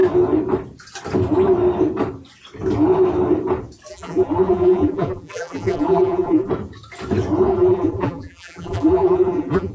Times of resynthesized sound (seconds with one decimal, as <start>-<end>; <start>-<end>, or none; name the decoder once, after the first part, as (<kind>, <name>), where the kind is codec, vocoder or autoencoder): 3.9-6.5 (vocoder, BigVGAN v2); 7.5-9.7